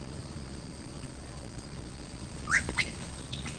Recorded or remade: remade